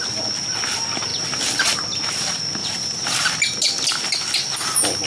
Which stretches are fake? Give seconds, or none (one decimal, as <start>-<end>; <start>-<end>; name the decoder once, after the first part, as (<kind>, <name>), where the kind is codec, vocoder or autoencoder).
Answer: none